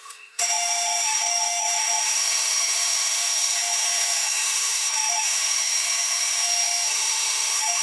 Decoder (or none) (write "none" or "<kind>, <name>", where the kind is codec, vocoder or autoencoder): autoencoder, DAC-VAE